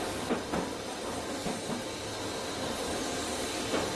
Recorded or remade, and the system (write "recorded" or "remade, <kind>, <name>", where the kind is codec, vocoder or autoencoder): recorded